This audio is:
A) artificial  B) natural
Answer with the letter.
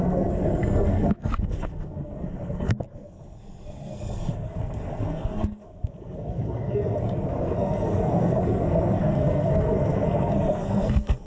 A